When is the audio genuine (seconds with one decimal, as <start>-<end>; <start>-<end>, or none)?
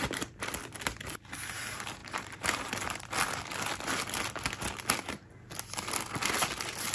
0.0-2.0; 2.7-6.9